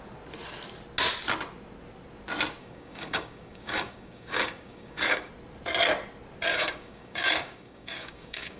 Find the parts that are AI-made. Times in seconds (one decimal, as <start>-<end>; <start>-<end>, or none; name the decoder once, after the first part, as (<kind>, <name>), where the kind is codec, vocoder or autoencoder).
2.6-5.3 (codec, DAC); 6.5-8.6